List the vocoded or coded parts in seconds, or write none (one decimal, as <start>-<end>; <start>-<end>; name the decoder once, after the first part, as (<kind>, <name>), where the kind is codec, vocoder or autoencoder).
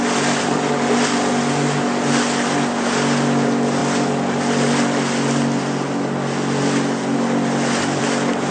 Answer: none